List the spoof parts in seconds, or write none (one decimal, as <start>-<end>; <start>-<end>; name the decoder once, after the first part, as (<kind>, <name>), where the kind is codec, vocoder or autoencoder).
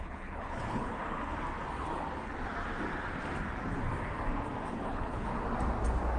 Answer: 0.0-1.0 (codec, HILCodec); 4.7-5.3